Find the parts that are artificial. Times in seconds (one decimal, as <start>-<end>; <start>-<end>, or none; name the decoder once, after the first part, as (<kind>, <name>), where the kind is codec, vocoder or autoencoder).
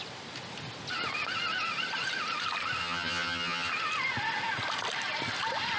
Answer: 2.8-3.7 (vocoder, HiFi-GAN)